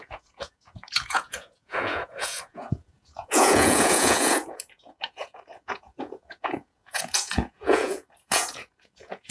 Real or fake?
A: fake